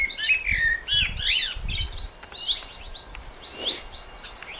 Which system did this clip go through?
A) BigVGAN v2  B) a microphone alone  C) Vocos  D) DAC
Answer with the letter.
B